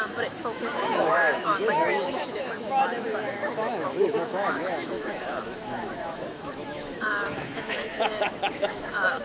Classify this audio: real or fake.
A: fake